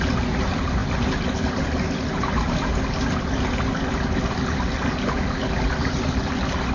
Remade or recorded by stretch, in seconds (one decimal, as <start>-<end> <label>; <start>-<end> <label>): 0.0-6.7 recorded